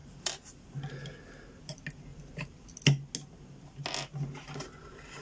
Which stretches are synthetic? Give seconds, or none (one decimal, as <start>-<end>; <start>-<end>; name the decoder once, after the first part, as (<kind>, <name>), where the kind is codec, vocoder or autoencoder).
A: 0.0-0.6 (vocoder, BigVGAN v2); 2.1-2.7